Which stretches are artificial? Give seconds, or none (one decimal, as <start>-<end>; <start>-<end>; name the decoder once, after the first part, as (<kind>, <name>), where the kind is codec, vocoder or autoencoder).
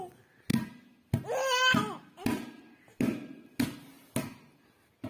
none